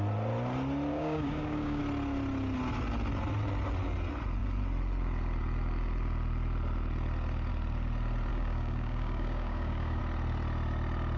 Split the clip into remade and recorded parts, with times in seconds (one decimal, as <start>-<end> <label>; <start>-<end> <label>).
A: 0.0-0.9 recorded; 0.9-1.8 remade; 1.8-8.3 recorded; 8.3-10.0 remade; 10.0-11.2 recorded